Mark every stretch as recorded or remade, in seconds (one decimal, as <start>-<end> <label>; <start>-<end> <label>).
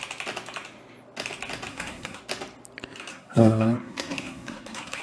0.0-1.7 recorded; 1.7-2.2 remade; 2.2-3.1 recorded; 3.1-5.0 remade